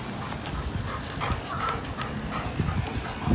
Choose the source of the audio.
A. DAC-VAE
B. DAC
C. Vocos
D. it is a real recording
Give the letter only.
D